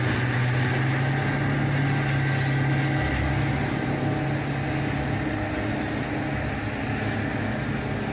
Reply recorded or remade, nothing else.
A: recorded